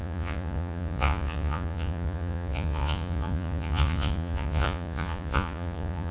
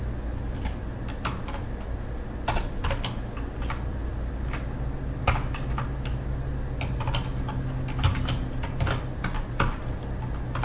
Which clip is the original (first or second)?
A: second